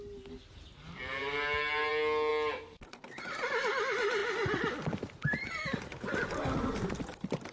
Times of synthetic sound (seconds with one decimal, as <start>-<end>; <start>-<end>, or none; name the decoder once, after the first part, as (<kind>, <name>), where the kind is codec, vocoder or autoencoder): none